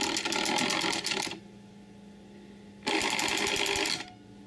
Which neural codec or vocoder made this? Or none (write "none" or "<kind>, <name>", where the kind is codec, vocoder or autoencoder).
none